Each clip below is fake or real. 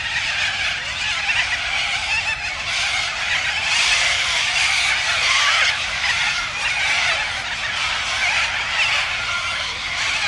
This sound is real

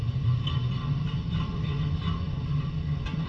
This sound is fake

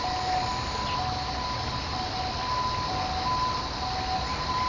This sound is real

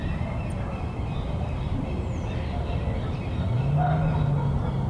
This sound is real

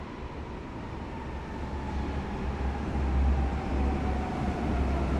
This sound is real